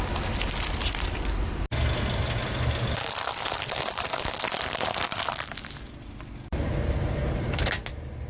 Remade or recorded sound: recorded